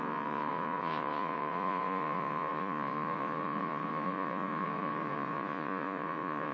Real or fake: fake